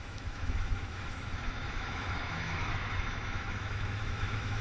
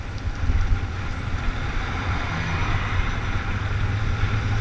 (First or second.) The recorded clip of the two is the second